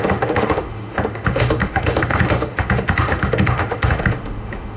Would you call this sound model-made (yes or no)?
yes